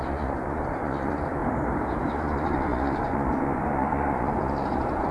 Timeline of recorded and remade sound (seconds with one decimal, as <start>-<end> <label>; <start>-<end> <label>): 0.0-1.4 remade; 1.4-2.1 recorded; 2.1-5.1 remade